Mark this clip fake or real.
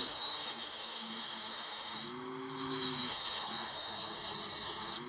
fake